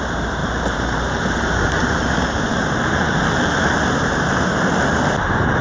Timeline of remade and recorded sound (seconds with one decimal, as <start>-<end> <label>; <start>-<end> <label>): 0.0-0.4 recorded; 0.4-3.8 remade; 3.8-5.6 recorded